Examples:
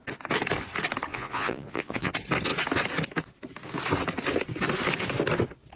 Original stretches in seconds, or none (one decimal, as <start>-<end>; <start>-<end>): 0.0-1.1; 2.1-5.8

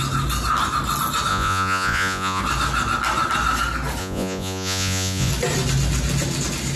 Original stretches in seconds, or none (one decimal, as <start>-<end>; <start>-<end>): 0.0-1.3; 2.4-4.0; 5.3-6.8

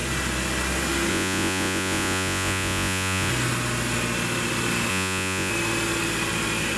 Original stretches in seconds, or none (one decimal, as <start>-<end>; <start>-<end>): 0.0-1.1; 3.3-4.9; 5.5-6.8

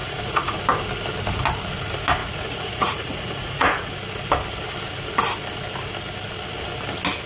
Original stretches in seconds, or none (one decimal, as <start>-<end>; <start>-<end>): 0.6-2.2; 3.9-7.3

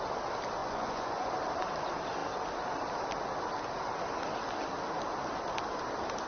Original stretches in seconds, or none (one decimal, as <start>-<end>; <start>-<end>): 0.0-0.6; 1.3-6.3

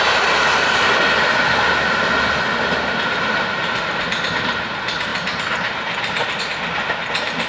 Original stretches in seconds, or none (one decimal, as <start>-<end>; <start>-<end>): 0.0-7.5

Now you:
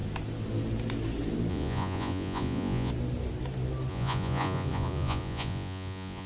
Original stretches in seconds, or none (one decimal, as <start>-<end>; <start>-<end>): 0.0-1.5; 2.9-3.9